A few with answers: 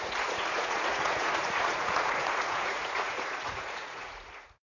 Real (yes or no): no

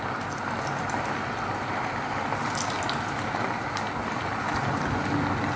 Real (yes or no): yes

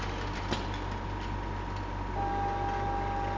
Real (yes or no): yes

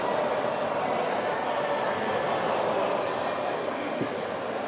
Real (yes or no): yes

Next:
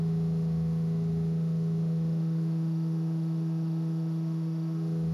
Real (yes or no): no